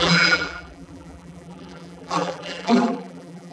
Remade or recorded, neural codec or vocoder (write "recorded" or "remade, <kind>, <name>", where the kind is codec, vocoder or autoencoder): remade, vocoder, BigVGAN v2